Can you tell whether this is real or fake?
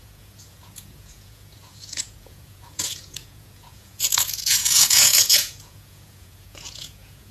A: fake